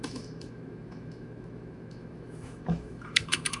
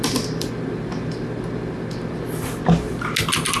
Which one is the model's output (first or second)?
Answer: first